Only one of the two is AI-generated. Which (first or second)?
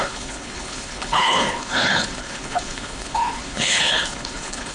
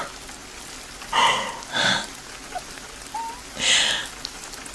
first